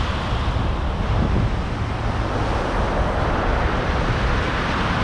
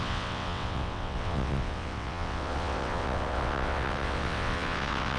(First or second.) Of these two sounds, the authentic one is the first